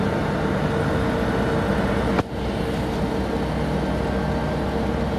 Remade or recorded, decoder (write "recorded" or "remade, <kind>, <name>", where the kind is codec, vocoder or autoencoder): recorded